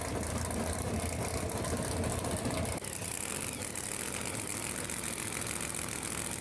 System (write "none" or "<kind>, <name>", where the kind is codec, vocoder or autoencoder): none